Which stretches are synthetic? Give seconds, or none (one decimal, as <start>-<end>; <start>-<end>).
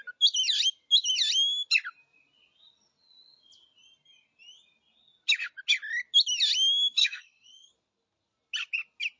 7.0-7.7